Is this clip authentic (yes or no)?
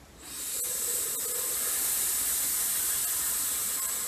yes